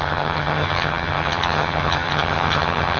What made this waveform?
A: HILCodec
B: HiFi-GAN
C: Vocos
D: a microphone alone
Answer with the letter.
B